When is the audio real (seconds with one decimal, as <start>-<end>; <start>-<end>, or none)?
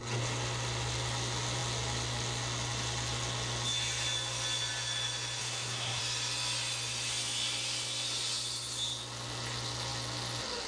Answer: 0.0-5.4; 6.0-10.7